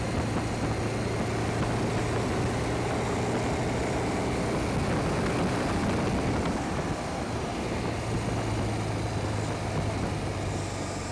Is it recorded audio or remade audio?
recorded